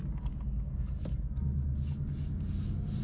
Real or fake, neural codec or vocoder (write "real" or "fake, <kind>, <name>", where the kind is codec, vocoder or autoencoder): real